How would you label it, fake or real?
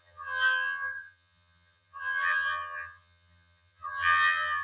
fake